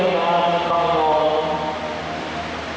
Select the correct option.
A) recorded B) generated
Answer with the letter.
A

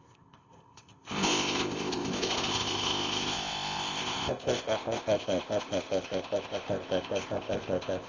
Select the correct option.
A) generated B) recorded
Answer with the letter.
A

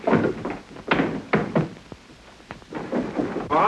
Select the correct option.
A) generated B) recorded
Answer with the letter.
B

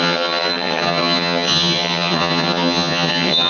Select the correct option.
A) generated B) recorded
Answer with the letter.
A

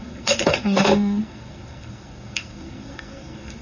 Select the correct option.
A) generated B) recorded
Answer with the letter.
A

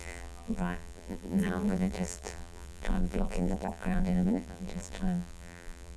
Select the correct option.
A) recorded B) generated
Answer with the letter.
B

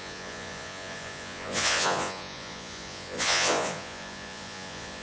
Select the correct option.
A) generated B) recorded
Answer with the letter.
A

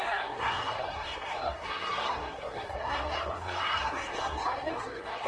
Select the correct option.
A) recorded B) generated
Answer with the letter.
B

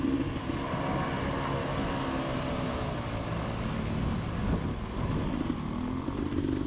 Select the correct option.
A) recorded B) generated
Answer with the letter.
A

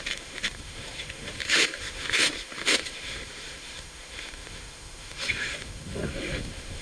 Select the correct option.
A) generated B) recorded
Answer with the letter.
A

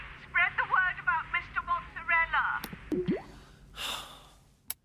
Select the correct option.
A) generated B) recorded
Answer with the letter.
B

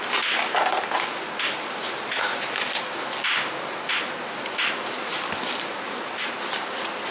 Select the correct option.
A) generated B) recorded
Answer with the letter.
B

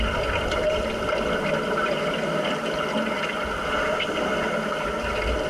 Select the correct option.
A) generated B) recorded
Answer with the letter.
B